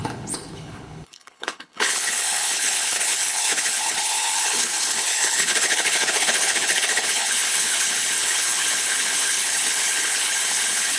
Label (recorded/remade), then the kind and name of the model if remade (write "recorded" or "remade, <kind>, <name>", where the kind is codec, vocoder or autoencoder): remade, codec, HILCodec